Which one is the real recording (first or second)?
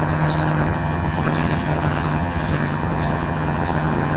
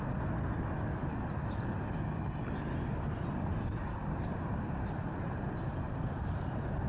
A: second